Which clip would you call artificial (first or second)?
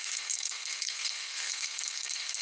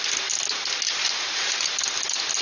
first